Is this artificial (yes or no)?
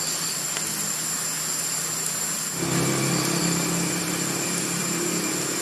no